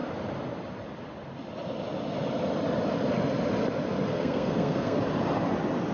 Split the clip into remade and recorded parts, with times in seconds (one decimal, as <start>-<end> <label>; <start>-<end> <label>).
0.0-4.1 recorded; 4.1-5.0 remade; 5.0-5.9 recorded